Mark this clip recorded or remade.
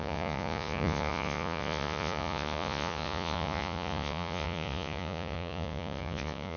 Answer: remade